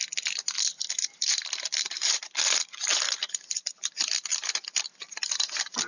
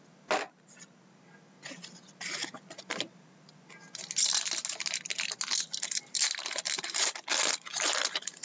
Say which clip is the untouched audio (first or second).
second